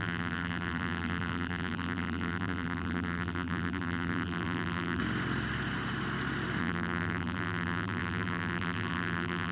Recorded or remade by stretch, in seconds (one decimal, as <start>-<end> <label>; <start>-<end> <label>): 0.0-5.0 remade; 5.0-6.6 recorded; 6.6-9.5 remade

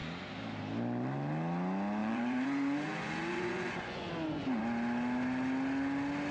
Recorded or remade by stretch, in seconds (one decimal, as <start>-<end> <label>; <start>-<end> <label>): 0.0-2.0 recorded; 2.0-4.6 remade; 4.6-6.3 recorded

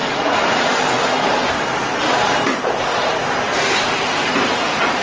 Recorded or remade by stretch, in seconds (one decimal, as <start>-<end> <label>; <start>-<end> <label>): 0.0-0.7 remade; 0.7-5.0 recorded

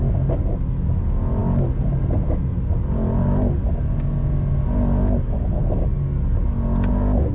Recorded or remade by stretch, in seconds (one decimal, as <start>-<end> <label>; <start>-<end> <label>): 0.0-7.3 recorded

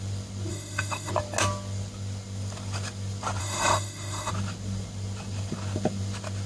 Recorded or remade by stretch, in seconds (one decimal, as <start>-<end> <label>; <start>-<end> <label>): 0.0-0.5 recorded; 0.5-1.1 remade; 1.1-3.4 recorded; 3.4-4.3 remade; 4.3-6.5 recorded

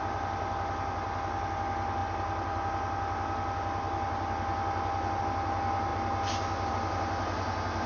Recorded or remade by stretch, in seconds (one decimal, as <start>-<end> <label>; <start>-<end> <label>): 0.0-7.9 recorded